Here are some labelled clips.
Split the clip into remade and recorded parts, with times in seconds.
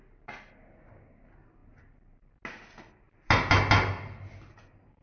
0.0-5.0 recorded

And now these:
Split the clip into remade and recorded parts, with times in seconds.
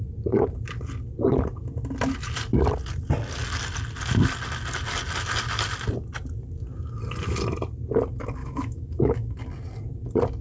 0.0-8.4 recorded; 8.4-9.4 remade; 9.4-10.4 recorded